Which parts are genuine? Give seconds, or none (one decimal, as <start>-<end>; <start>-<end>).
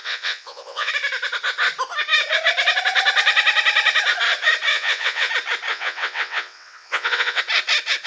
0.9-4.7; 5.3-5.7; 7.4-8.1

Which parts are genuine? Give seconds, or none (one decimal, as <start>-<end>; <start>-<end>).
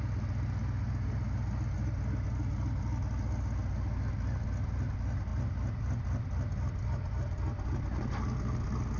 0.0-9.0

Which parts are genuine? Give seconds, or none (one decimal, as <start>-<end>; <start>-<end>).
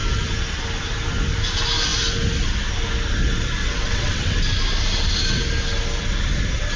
0.0-3.6; 4.4-6.8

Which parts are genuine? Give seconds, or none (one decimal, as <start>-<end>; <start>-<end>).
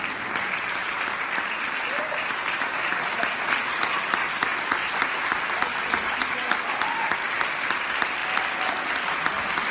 0.0-0.8; 1.4-5.7; 6.2-9.7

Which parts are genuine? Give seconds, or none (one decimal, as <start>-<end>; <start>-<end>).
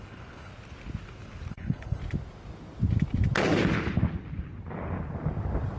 0.5-1.5; 2.0-5.8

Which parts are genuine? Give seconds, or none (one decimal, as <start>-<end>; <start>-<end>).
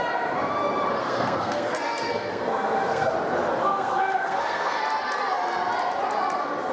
0.0-1.0; 3.1-3.6; 4.8-6.7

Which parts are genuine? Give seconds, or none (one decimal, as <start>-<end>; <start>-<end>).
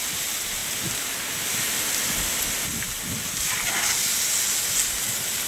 0.0-5.5